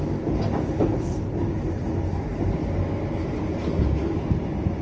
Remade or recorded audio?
recorded